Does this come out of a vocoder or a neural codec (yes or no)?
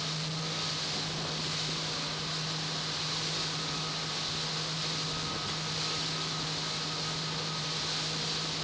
no